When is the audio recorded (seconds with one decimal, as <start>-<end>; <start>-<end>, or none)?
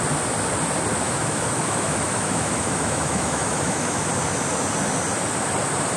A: 0.0-0.9; 4.1-6.0